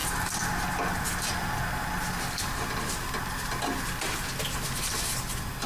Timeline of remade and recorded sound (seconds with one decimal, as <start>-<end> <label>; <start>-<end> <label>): 0.0-5.7 recorded